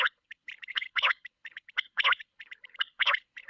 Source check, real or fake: fake